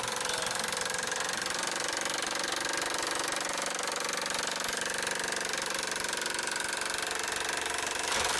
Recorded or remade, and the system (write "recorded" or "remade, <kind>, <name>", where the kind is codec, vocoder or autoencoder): recorded